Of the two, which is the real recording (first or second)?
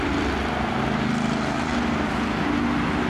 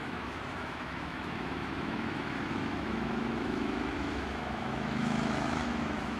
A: first